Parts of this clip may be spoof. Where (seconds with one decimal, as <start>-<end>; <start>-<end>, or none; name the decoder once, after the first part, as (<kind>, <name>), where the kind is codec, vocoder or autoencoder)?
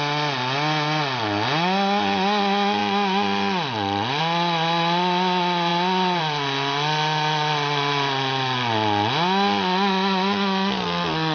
none